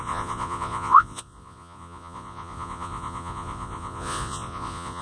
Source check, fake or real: fake